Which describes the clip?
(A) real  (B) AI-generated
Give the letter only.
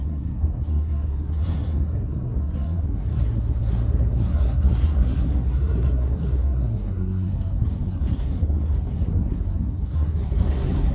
B